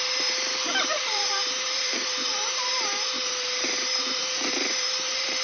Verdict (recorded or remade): remade